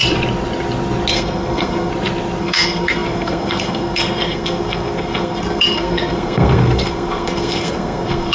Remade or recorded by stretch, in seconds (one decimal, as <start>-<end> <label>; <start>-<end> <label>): 0.0-1.1 recorded; 1.1-1.9 remade; 1.9-2.4 recorded; 2.4-8.3 remade